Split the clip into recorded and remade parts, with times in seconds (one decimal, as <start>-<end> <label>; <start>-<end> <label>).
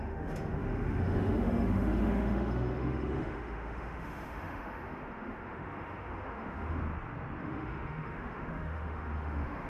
0.0-6.8 remade; 6.8-7.4 recorded; 7.4-9.7 remade